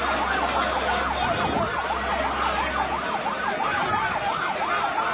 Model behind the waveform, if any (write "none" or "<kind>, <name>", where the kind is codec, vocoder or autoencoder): none